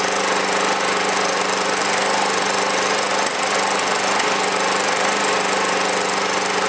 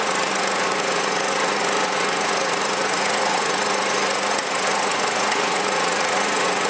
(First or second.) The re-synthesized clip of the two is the second